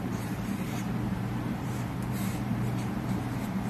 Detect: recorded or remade remade